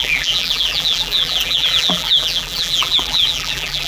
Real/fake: fake